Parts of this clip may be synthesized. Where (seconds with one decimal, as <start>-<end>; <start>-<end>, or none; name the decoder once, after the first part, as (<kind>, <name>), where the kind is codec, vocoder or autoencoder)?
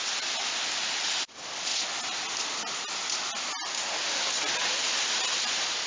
none